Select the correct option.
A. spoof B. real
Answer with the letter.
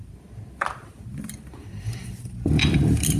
A